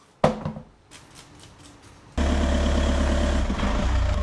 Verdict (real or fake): real